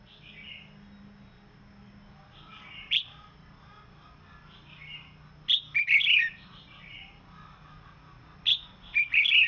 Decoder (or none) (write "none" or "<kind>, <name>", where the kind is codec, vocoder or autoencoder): none